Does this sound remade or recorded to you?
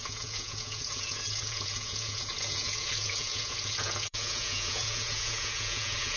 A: remade